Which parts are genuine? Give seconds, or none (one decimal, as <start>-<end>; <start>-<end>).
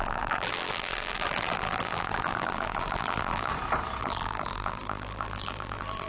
3.5-4.0